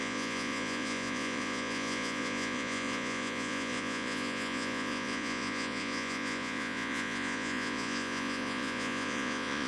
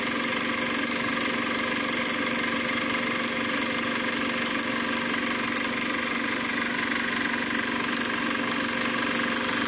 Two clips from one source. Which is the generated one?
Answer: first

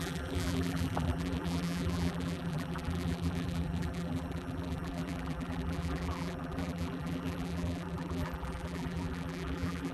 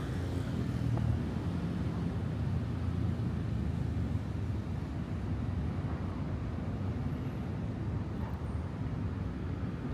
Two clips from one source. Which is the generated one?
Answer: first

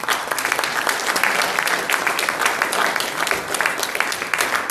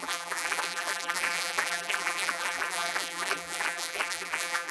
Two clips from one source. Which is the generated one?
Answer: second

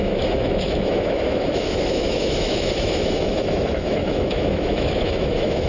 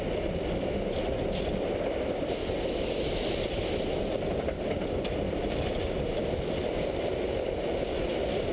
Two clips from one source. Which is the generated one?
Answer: first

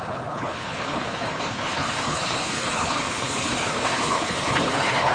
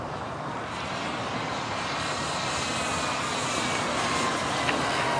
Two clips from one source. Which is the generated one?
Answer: first